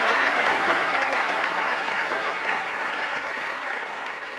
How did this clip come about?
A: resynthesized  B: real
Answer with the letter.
A